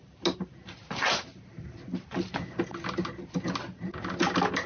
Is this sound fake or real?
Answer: real